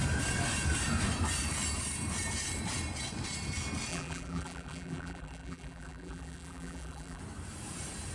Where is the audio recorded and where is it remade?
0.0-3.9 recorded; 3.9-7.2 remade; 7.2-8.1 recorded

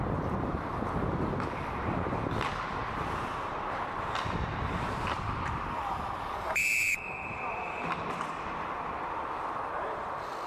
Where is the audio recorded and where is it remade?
0.0-2.8 recorded; 2.8-7.1 remade; 7.1-10.5 recorded

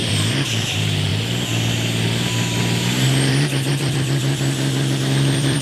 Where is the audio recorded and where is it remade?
0.0-1.1 remade; 1.1-3.3 recorded; 3.3-5.6 remade

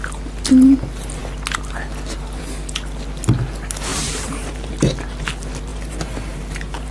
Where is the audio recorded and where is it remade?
0.0-3.9 recorded; 3.9-4.7 remade; 4.7-5.7 recorded; 5.7-6.9 remade

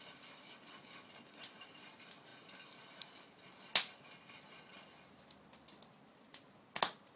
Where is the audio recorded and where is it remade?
0.0-7.2 recorded

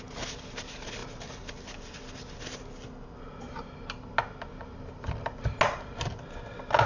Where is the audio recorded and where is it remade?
0.0-4.5 recorded; 4.5-5.0 remade; 5.0-6.9 recorded